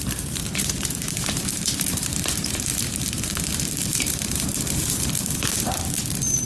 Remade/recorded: remade